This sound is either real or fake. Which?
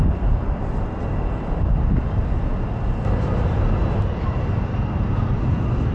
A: real